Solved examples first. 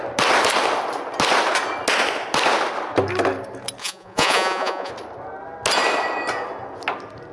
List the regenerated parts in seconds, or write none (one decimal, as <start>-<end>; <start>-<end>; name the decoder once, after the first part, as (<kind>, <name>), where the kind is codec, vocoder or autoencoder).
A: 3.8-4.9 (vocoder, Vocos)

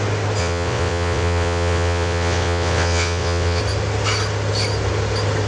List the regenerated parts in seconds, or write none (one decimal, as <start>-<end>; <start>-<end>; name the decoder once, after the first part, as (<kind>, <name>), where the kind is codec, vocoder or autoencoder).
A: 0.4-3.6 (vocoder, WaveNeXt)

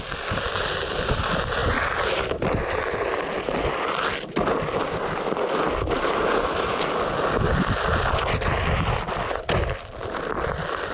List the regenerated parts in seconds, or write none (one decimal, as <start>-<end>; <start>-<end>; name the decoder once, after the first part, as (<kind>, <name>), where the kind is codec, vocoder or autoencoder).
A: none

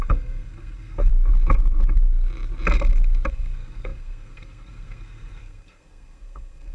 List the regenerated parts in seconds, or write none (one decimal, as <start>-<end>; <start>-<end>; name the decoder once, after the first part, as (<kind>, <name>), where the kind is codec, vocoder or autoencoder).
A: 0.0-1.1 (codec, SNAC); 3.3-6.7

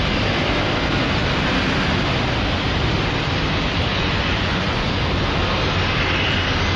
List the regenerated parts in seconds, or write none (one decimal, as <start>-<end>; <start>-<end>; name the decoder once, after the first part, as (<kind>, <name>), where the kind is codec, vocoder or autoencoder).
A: 3.9-5.0 (vocoder, Vocos)

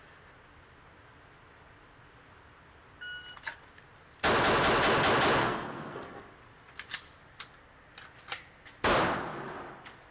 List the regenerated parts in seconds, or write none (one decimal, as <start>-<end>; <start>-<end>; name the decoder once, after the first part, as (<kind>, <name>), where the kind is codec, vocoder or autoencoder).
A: 5.4-6.2 (codec, SNAC)

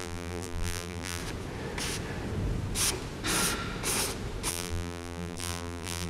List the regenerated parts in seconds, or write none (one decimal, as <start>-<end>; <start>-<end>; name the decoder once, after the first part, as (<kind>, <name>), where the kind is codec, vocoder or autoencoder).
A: 0.0-1.2 (vocoder, BigVGAN v2); 4.5-6.1

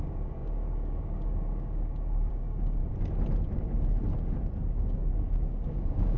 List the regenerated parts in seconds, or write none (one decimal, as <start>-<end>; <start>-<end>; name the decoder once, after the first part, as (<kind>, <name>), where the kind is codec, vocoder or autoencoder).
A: 0.0-2.8 (codec, DAC); 4.8-6.2